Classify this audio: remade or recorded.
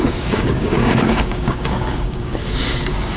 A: remade